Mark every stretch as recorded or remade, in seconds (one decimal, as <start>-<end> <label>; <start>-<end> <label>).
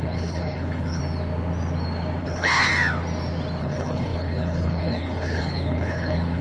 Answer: 0.0-1.0 remade; 1.0-2.2 recorded; 2.2-2.7 remade; 2.7-3.6 recorded; 3.6-6.4 remade